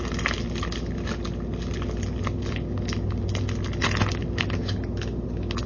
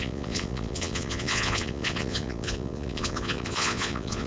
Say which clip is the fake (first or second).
second